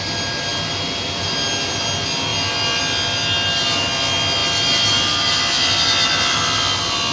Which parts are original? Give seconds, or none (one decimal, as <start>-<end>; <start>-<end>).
0.0-7.1